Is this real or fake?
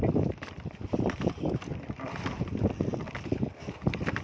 real